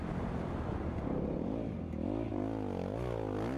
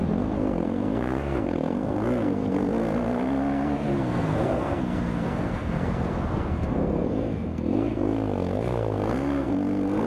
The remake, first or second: second